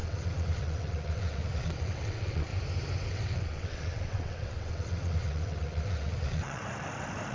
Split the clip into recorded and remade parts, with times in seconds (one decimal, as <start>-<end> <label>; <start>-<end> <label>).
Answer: 0.0-2.5 remade; 2.5-3.1 recorded; 3.1-6.6 remade; 6.6-7.3 recorded